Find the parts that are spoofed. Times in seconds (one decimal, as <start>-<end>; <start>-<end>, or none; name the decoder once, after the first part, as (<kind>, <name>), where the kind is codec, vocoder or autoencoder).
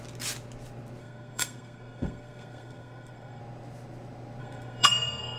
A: 1.0-3.4 (codec, SNAC); 4.4-5.4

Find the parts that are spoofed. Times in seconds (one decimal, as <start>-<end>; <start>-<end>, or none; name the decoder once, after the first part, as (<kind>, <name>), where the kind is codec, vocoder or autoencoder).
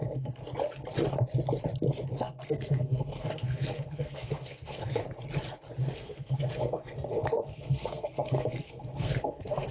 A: 0.0-0.4 (codec, SNAC); 2.1-5.0; 5.8-9.7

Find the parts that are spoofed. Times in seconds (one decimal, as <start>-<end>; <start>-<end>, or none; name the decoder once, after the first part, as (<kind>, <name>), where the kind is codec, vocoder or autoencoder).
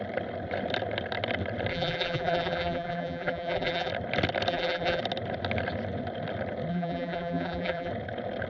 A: 1.7-3.9 (vocoder, BigVGAN v2); 4.5-5.0; 6.7-7.9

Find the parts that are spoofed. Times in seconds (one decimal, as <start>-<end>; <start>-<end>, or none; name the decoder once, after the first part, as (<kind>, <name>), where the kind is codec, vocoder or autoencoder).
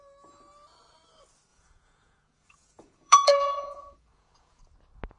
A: 1.5-4.6 (vocoder, Vocos)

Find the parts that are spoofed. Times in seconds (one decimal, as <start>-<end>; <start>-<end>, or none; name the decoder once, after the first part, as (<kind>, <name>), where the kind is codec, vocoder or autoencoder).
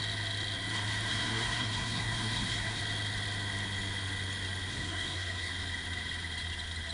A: 1.1-2.8 (codec, SNAC); 4.7-5.5